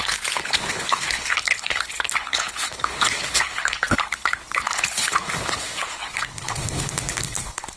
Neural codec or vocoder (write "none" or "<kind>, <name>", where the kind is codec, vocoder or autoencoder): codec, HILCodec